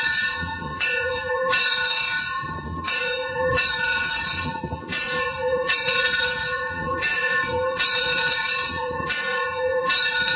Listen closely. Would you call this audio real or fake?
fake